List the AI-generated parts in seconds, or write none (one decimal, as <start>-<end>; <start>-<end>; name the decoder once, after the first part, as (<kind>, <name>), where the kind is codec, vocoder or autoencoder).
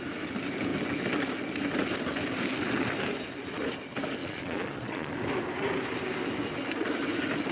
4.2-5.1 (vocoder, Vocos)